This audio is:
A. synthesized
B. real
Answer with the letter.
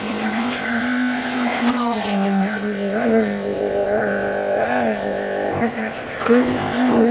A